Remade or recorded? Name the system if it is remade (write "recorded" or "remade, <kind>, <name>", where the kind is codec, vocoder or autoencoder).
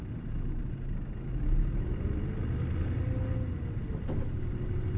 recorded